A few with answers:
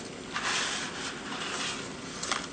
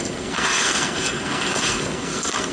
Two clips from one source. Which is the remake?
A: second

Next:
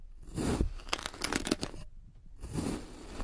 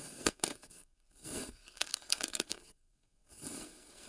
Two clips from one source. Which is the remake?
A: second